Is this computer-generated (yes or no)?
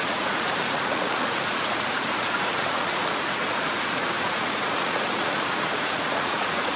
yes